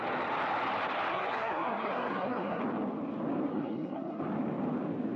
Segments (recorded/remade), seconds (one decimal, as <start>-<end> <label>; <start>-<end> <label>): 0.0-1.1 recorded; 1.1-2.6 remade; 2.6-3.5 recorded; 3.5-4.2 remade; 4.2-5.2 recorded